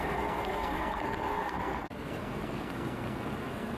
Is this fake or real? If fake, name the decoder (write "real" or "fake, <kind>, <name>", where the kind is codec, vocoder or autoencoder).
fake, codec, SNAC